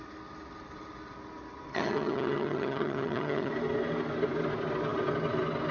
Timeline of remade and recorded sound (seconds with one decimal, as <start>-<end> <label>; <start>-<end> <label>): 0.0-1.7 recorded; 1.7-3.5 remade; 3.5-5.7 recorded